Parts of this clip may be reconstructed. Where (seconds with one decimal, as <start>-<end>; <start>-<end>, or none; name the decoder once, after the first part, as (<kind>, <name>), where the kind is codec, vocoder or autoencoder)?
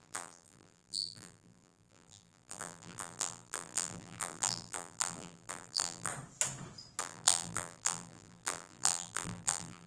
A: 0.0-6.1 (vocoder, BigVGAN v2); 7.0-9.9